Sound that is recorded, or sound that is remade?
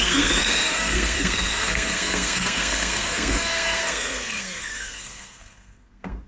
remade